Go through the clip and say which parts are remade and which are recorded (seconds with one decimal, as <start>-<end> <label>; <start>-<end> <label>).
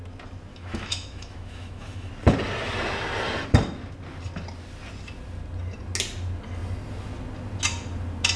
0.0-0.5 recorded; 0.5-2.1 remade; 2.1-8.4 recorded